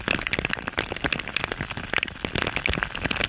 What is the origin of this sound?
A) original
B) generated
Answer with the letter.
A